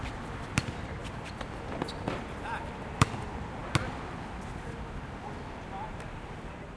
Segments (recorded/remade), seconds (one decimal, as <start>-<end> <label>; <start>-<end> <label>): 0.0-3.6 remade; 3.6-5.8 recorded; 5.8-6.8 remade